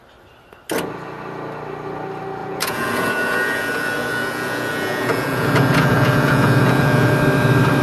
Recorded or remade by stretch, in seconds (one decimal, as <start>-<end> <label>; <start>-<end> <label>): 0.0-2.4 recorded; 2.4-7.1 remade; 7.1-7.8 recorded